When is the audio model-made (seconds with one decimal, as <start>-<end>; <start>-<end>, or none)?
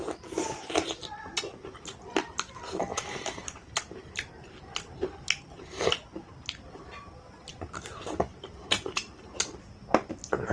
2.9-7.1; 7.5-9.4